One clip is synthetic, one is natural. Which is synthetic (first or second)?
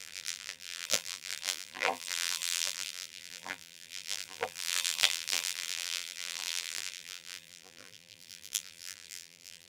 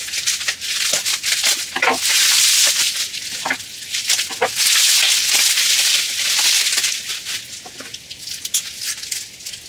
first